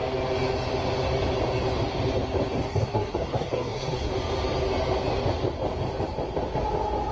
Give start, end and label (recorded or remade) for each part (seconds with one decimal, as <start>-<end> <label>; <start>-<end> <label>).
0.0-2.7 recorded; 2.7-4.1 remade; 4.1-7.1 recorded